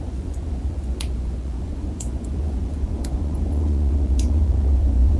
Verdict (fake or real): fake